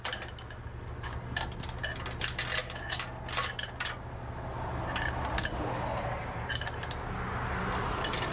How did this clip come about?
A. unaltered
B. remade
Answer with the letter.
A